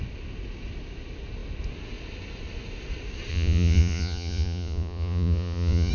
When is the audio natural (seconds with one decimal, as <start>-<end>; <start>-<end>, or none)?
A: 0.0-3.3